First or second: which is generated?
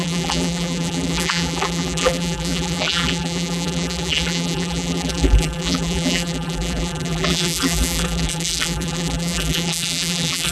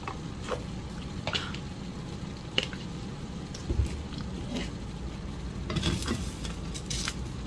first